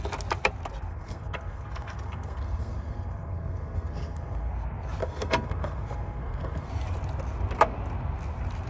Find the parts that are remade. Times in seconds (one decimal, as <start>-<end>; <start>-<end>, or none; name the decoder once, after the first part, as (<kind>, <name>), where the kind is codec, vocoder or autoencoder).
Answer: 0.9-4.5 (codec, SNAC); 5.0-6.7